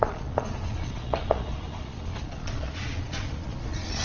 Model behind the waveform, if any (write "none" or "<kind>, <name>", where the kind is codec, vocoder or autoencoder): vocoder, Vocos